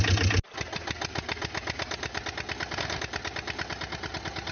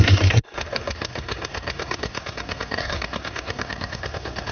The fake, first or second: second